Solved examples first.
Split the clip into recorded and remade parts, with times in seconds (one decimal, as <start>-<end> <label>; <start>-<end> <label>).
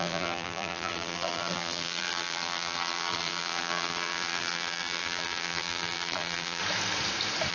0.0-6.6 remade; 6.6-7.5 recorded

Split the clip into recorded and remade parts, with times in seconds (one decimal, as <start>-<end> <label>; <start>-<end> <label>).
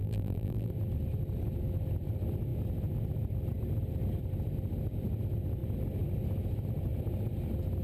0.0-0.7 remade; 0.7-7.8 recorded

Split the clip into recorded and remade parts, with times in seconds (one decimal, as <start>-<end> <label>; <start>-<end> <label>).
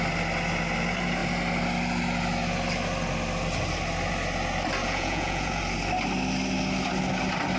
0.0-4.8 recorded; 4.8-5.6 remade; 5.6-7.6 recorded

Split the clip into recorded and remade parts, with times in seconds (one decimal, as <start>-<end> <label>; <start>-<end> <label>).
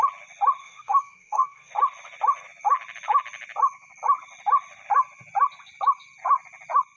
0.0-0.6 recorded; 0.6-1.7 remade; 1.7-7.0 recorded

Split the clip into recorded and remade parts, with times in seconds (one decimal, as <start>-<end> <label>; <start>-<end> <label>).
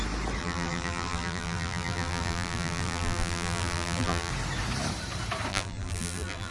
0.0-0.4 recorded; 0.4-4.3 remade; 4.3-5.5 recorded; 5.5-6.5 remade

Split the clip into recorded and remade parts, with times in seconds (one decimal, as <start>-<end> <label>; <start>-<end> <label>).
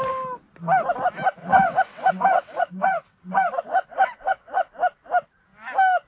0.0-1.4 recorded; 1.4-4.7 remade; 4.7-6.1 recorded